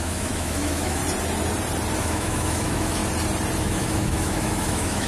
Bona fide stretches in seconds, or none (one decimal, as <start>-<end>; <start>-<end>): 1.0-2.0; 3.0-3.6